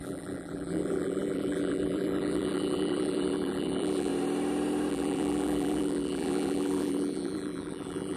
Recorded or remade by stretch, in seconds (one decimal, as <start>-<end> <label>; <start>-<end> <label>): 0.0-4.1 remade; 4.1-4.9 recorded; 4.9-8.2 remade